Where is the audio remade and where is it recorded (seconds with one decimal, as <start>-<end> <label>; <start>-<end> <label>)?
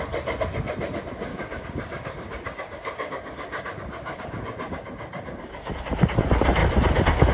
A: 0.0-1.3 recorded; 1.3-5.7 remade; 5.7-7.3 recorded